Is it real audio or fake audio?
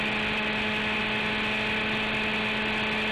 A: real